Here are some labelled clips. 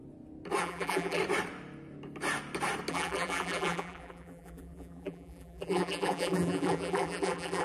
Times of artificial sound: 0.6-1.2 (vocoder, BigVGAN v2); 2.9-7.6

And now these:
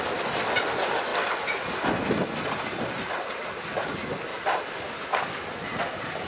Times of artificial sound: none

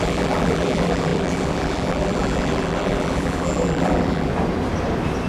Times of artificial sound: 0.0-4.3 (vocoder, BigVGAN v2)